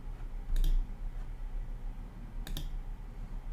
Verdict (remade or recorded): recorded